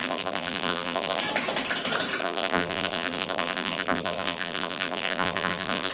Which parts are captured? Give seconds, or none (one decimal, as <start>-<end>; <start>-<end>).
1.2-2.2